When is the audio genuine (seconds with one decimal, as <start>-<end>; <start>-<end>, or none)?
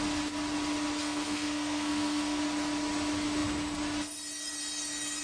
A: 0.0-1.0; 2.4-5.2